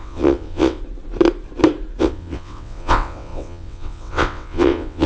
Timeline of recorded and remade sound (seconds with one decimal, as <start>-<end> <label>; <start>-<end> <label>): 0.0-0.8 remade; 0.8-2.0 recorded; 2.0-5.1 remade